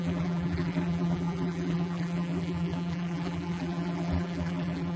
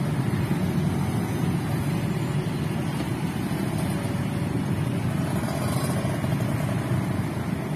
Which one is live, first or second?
second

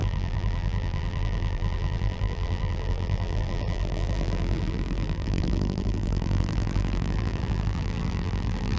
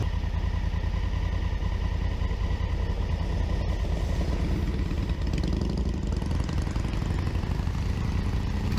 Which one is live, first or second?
second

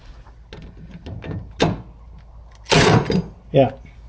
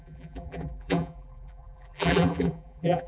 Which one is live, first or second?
first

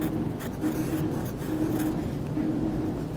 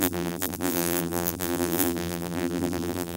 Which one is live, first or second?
first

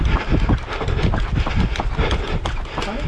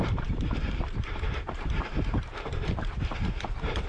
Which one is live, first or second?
first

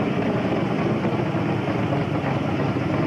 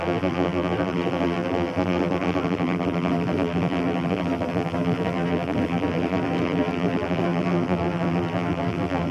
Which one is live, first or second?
first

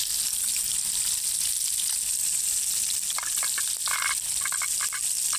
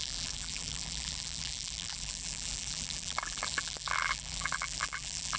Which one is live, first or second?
first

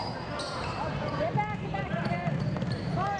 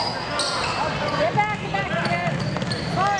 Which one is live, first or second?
second